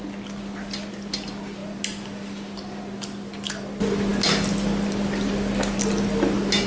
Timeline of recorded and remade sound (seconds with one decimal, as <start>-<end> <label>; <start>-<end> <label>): 0.0-6.7 recorded